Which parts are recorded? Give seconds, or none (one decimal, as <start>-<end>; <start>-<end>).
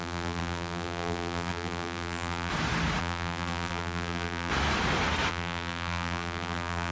2.5-3.0; 4.5-5.3